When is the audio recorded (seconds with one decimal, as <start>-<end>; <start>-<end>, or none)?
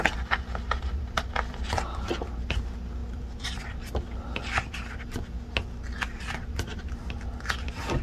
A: 0.0-3.0; 3.6-8.0